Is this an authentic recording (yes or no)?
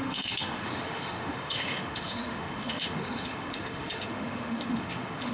no